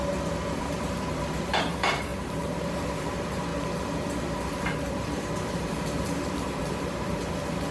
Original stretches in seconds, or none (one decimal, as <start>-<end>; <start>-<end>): 0.0-0.6; 3.5-4.6